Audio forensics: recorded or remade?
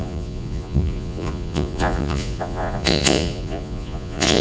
remade